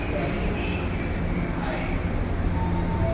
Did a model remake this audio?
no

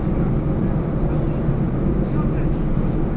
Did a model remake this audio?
no